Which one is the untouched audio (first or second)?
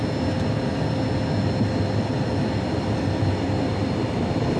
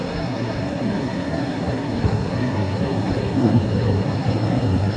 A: first